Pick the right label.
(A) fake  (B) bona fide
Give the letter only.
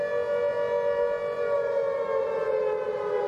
B